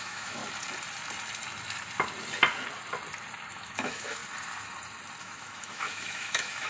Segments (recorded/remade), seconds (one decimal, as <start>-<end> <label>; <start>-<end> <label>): 0.0-0.4 remade; 0.4-3.5 recorded; 3.5-4.2 remade; 4.2-5.2 recorded; 5.2-6.7 remade